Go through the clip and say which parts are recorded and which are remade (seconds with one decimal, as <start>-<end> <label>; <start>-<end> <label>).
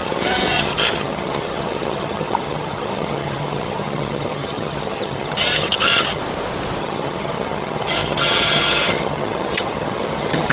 0.0-6.2 remade; 6.2-6.8 recorded; 6.8-10.5 remade